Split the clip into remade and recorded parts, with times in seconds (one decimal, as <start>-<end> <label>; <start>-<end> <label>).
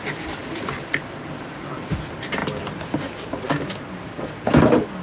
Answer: 0.0-0.4 recorded; 0.4-1.5 remade; 1.5-2.4 recorded; 2.4-4.3 remade; 4.3-5.0 recorded